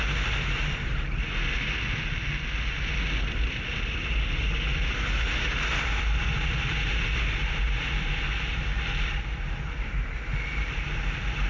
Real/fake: real